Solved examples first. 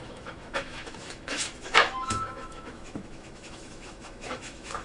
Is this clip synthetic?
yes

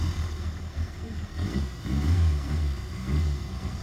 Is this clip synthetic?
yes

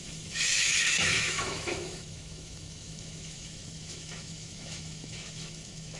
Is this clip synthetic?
yes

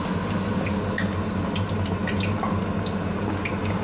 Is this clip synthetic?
no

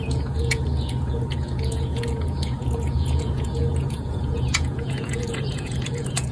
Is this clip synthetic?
yes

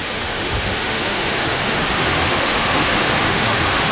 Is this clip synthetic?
yes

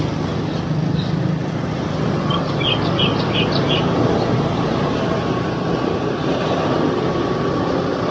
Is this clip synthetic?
no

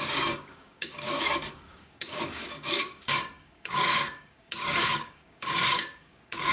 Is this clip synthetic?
yes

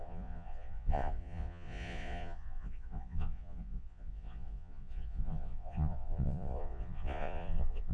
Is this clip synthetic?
yes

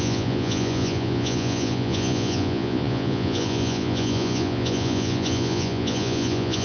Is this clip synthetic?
yes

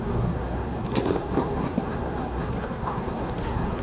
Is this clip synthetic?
yes